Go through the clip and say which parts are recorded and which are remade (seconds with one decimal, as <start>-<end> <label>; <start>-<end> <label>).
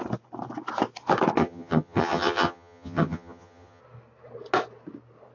0.0-1.4 recorded; 1.4-3.8 remade; 3.8-5.3 recorded